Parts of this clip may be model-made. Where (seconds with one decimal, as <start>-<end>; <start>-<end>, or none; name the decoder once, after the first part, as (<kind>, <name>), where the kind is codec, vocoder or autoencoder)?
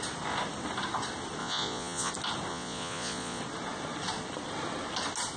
1.4-2.1 (vocoder, Vocos); 2.5-3.4